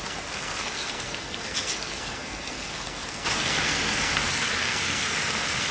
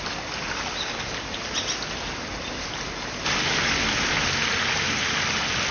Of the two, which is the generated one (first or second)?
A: first